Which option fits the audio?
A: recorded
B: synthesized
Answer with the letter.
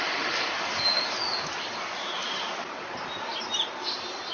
A